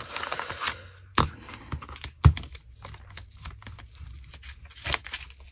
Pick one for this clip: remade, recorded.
recorded